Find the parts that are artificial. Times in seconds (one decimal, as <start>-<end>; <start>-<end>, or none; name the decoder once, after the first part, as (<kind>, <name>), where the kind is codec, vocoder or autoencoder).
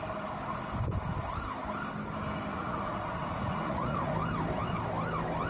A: 2.5-4.1 (vocoder, Vocos)